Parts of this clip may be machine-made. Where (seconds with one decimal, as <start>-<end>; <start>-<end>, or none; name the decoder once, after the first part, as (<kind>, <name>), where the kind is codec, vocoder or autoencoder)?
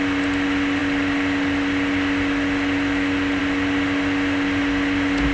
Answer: none